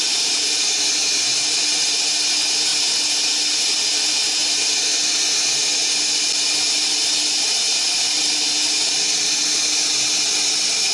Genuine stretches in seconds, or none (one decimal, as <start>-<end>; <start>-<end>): 0.0-10.9